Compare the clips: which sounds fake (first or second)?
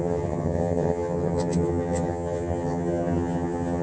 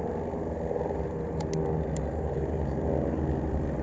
first